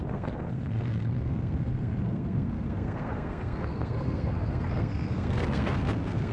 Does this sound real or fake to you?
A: fake